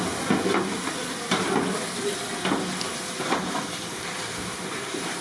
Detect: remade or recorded recorded